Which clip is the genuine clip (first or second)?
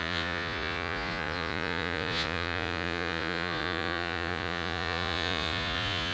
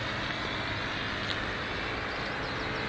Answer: second